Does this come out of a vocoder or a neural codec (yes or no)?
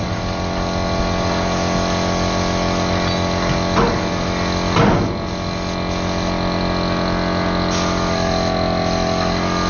no